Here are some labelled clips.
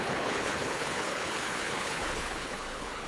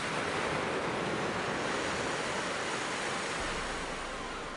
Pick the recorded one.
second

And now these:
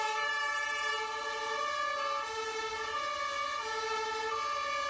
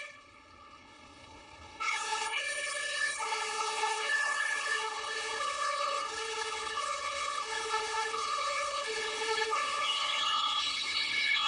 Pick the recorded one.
first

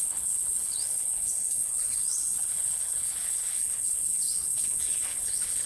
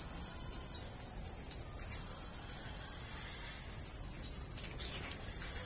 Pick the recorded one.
second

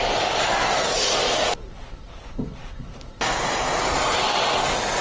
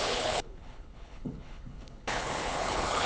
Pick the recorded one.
first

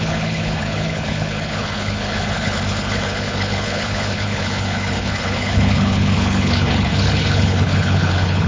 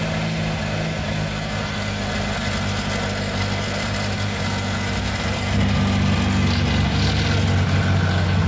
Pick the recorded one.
second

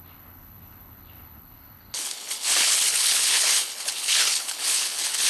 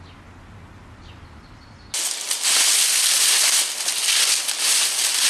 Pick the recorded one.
second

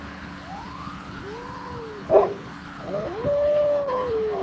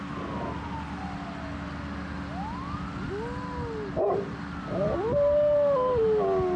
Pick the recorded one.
second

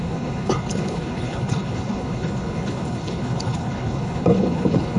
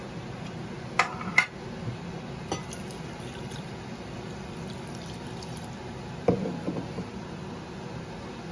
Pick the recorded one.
second